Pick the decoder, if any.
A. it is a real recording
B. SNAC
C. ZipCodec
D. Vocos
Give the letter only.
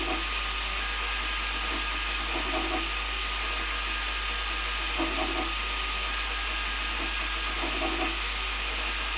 A